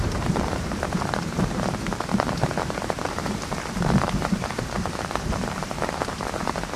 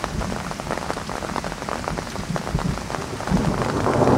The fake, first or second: first